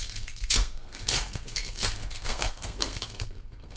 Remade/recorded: remade